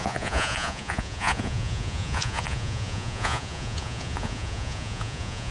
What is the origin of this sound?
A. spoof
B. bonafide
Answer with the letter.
A